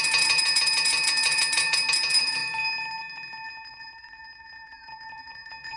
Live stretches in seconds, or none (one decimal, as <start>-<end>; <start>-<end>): 2.4-3.7